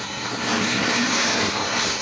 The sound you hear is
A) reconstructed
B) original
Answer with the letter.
A